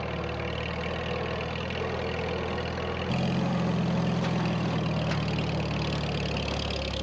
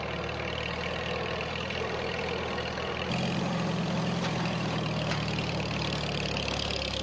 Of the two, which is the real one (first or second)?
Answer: first